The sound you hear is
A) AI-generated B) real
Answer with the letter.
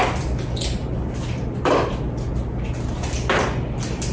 B